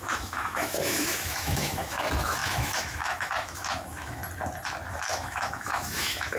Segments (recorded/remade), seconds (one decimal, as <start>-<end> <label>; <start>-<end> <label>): 0.0-4.2 remade; 4.2-5.0 recorded; 5.0-6.4 remade